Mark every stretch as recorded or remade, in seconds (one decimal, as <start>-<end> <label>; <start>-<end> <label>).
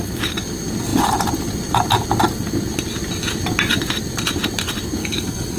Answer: 0.0-5.0 recorded; 5.0-5.6 remade